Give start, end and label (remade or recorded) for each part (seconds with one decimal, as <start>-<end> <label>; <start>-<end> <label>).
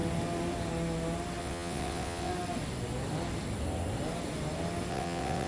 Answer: 0.0-1.4 recorded; 1.4-2.3 remade; 2.3-4.9 recorded; 4.9-5.5 remade